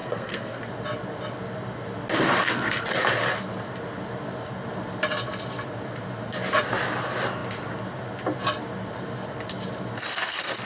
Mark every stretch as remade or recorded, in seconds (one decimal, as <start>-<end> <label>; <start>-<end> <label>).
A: 0.0-0.6 remade; 0.6-10.6 recorded